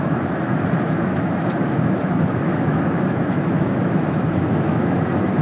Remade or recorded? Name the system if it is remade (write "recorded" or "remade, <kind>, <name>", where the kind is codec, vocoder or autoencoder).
remade, autoencoder, DAC-VAE